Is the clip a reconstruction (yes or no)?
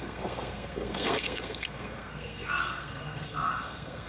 yes